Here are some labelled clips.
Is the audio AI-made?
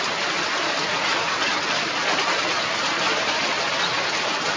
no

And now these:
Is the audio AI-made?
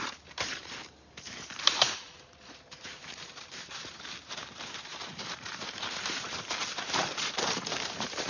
yes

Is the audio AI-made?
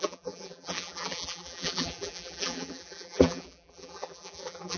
yes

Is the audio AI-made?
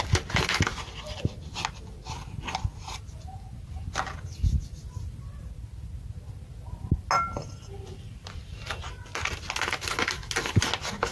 no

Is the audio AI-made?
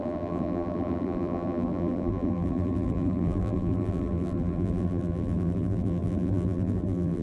yes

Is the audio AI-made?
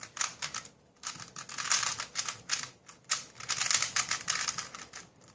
no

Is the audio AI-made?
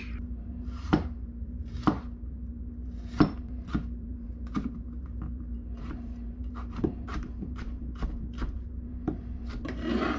yes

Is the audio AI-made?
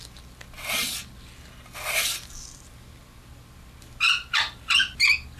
no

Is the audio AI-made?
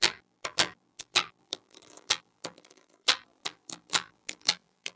yes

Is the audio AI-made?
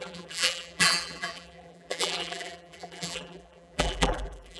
yes